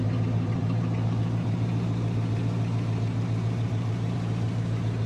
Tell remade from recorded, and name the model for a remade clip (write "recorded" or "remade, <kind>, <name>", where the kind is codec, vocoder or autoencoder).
remade, vocoder, BigVGAN v2